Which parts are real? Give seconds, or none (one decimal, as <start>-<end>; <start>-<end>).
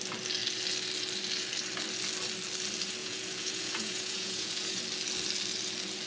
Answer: 0.0-3.0; 4.8-6.1